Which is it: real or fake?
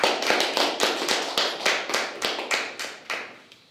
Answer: real